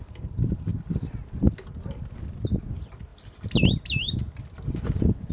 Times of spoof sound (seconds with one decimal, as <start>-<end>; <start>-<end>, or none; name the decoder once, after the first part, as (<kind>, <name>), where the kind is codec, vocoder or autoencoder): none